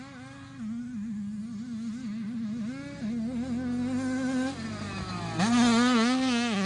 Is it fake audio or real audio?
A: real